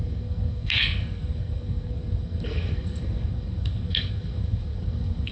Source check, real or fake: fake